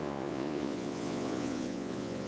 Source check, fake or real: fake